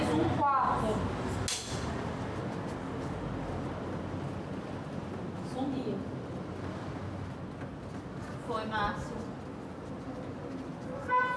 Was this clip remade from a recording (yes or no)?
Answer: no